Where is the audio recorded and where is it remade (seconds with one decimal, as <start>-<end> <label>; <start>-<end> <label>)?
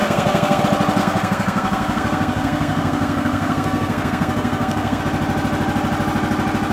0.0-0.6 remade; 0.6-1.0 recorded; 1.0-5.0 remade; 5.0-6.7 recorded